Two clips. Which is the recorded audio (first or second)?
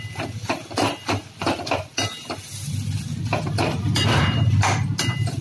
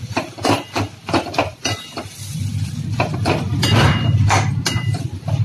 first